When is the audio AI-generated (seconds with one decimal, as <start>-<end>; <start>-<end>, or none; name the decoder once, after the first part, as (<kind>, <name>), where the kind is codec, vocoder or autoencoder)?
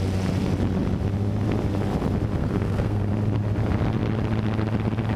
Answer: 2.4-3.1 (codec, SNAC)